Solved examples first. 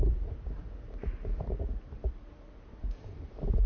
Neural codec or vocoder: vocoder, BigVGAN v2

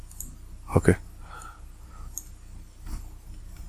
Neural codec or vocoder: none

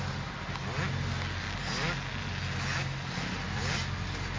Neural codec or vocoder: none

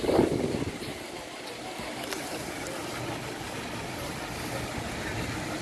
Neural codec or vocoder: none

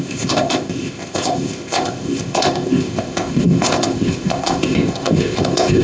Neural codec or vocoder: codec, ZipCodec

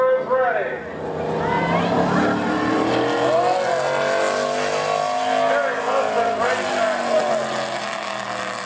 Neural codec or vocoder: none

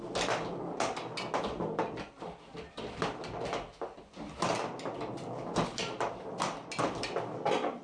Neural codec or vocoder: none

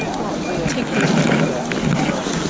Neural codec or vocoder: none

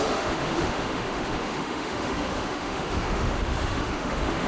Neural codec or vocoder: autoencoder, DAC-VAE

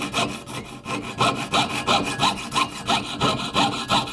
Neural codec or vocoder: none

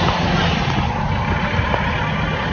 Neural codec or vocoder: none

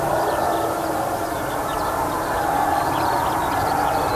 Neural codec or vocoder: none